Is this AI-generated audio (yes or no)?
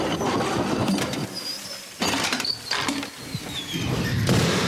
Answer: no